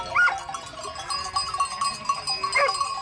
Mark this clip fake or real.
real